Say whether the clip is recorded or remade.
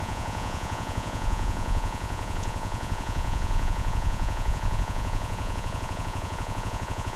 remade